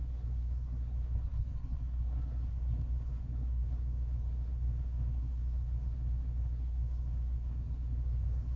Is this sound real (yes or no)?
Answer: no